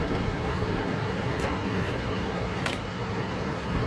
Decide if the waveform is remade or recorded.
remade